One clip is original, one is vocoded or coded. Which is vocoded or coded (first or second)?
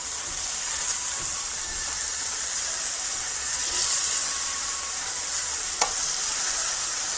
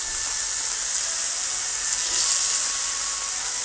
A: first